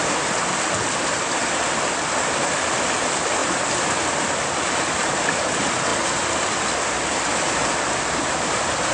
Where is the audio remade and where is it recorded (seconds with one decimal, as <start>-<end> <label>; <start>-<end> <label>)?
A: 0.0-8.9 recorded